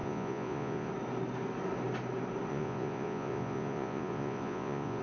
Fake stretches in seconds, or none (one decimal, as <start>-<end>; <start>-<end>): 0.0-0.9; 2.5-5.0